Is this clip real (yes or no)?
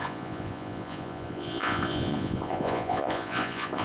no